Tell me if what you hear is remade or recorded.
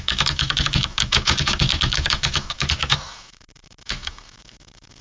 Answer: remade